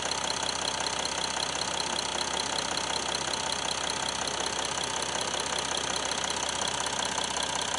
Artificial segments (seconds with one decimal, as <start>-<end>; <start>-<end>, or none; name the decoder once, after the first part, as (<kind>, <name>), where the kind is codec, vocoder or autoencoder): none